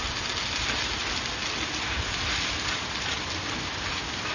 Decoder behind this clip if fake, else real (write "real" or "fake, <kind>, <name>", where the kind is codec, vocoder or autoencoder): real